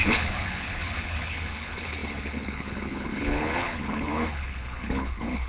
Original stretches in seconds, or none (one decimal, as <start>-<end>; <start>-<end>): none